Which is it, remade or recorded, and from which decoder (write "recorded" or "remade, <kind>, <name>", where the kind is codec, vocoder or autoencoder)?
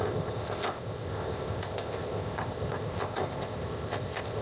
remade, codec, ZipCodec